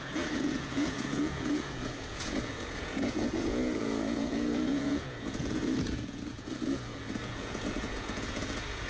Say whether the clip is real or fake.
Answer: fake